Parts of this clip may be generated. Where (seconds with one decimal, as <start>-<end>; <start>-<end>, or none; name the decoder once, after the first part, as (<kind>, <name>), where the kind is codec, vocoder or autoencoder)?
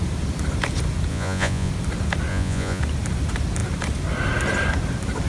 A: 1.1-1.7 (vocoder, Vocos); 2.3-2.8